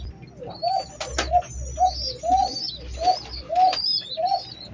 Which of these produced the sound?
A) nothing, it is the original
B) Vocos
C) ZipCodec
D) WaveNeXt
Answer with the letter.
A